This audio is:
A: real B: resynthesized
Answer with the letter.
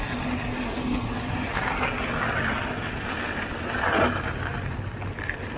A